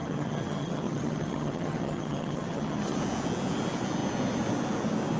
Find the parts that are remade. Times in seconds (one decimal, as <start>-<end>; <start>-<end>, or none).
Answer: 0.0-3.0